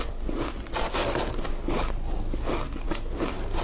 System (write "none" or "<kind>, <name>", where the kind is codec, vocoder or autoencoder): none